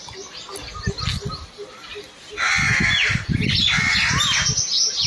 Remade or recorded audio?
recorded